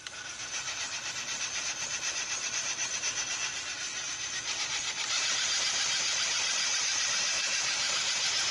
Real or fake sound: fake